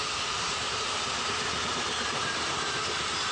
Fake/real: real